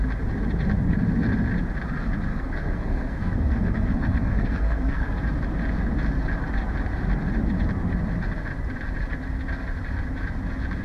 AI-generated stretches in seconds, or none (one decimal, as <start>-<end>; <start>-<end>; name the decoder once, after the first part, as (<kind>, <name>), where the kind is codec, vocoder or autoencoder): 2.3-5.1 (codec, SNAC)